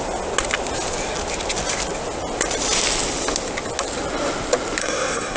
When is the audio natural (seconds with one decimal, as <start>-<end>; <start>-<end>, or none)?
0.0-4.8